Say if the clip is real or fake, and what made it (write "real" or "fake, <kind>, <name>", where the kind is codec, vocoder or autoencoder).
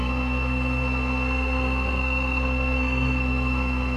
fake, codec, SNAC